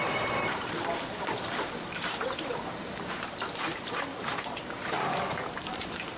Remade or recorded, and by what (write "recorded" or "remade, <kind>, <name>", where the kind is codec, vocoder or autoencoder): remade, vocoder, BigVGAN v2